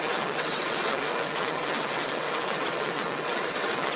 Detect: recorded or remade remade